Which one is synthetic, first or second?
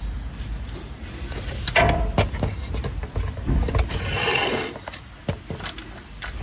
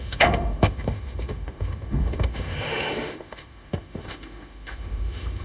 second